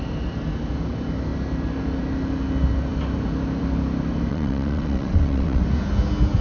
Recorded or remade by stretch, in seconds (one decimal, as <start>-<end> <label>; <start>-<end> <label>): 0.0-4.3 recorded; 4.3-5.6 remade; 5.6-6.4 recorded